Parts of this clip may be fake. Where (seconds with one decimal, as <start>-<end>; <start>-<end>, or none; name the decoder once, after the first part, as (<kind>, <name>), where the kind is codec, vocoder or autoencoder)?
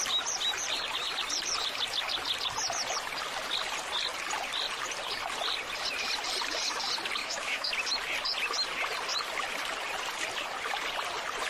7.2-7.7 (autoencoder, DAC-VAE)